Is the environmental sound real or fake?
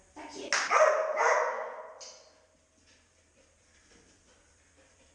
real